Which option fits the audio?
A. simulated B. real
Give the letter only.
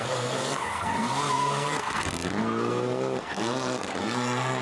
A